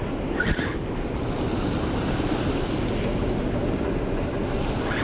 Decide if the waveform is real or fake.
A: real